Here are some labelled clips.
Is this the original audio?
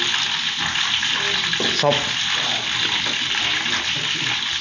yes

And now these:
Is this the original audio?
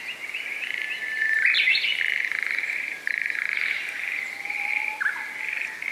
yes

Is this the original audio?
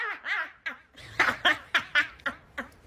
yes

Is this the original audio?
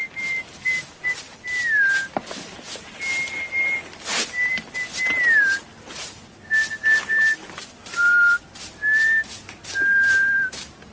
yes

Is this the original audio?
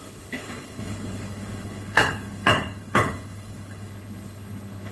no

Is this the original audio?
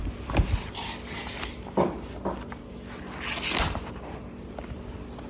yes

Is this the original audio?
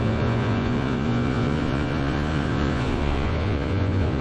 no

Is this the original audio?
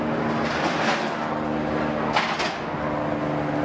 yes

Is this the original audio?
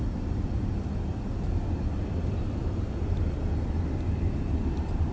yes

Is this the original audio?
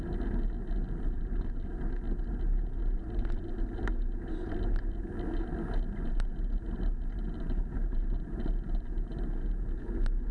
yes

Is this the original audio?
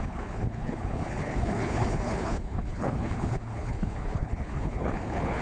no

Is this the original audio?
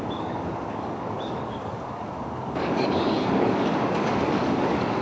no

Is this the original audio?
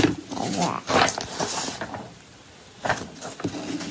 yes